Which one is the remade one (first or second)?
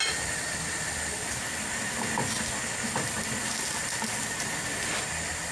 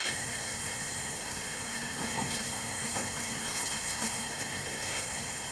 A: second